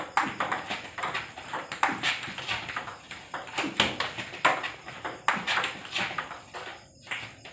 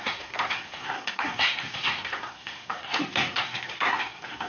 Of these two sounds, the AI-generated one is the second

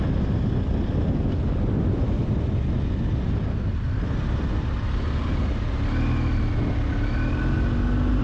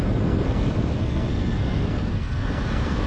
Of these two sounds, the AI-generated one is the second